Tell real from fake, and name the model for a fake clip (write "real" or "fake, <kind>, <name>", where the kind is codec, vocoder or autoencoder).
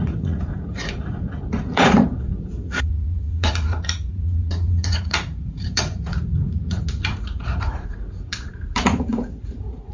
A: fake, vocoder, Vocos